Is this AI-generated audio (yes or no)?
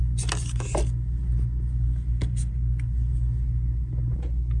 no